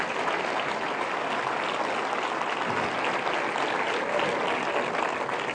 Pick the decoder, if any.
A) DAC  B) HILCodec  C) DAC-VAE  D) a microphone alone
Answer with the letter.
D